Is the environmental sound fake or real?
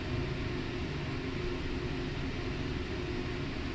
real